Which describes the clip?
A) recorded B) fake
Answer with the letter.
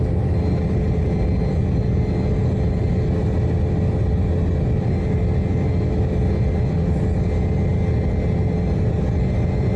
A